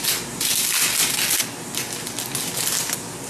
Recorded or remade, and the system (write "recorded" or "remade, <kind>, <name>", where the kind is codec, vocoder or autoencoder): recorded